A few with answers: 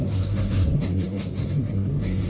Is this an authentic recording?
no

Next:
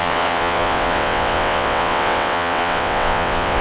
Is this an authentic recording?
no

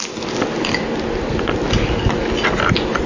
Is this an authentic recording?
yes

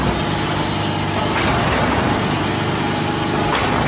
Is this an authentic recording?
yes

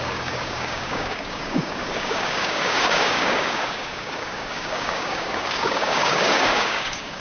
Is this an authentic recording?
no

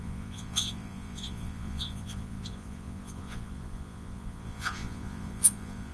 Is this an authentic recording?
no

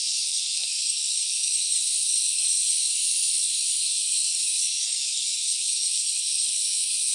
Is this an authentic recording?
no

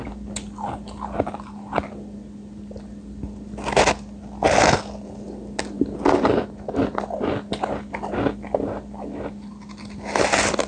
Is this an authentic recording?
yes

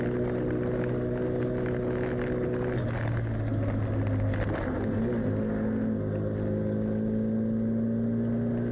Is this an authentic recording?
yes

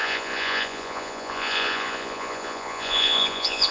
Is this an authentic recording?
no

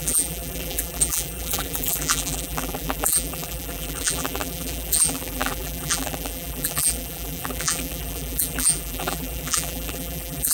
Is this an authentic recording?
no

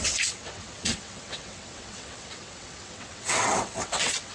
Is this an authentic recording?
no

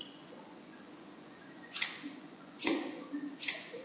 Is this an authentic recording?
no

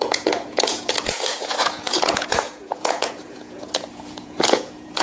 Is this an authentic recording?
no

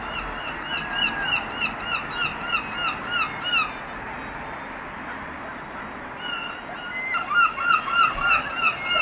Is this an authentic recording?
yes